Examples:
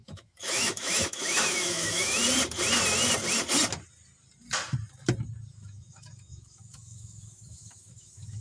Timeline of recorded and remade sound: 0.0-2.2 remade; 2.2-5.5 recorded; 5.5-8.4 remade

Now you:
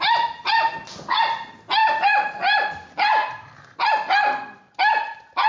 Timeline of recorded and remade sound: 0.0-5.5 recorded

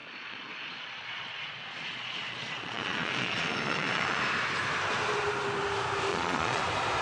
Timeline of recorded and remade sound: 0.0-4.2 remade; 4.2-6.1 recorded; 6.1-6.6 remade; 6.6-7.0 recorded